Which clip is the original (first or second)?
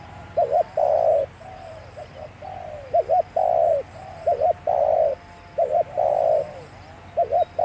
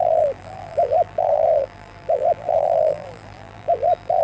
first